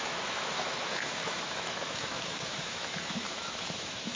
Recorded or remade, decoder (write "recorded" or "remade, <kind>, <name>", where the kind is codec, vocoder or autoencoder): remade, autoencoder, DAC-VAE